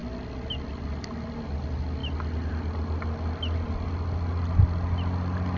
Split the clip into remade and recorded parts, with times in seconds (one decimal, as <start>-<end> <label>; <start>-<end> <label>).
0.0-5.6 recorded